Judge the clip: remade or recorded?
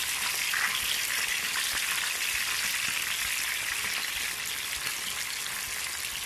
recorded